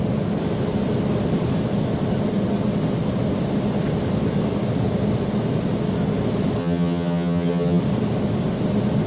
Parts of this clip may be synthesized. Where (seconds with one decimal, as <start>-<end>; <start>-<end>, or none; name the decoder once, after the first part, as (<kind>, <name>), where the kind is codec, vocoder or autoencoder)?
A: 6.6-7.8 (vocoder, HiFi-GAN)